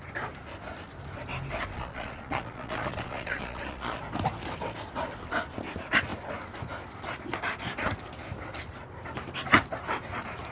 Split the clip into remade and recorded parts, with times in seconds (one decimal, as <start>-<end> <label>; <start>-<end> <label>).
0.0-1.7 recorded; 1.7-4.0 remade; 4.0-10.5 recorded